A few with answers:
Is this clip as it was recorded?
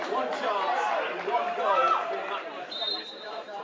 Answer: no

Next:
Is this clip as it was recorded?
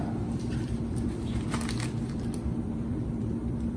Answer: no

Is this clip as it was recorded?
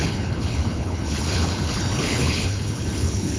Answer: no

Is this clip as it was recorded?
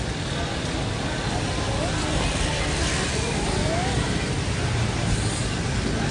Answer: yes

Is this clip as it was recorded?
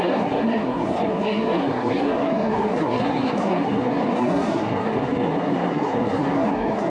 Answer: no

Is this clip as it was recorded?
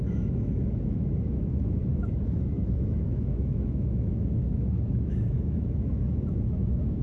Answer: no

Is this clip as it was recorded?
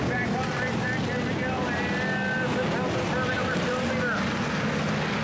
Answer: yes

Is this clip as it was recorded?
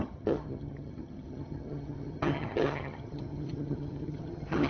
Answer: no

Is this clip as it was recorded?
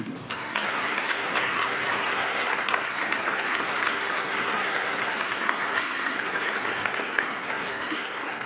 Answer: no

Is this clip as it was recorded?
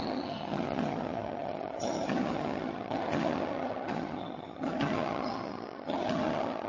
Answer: no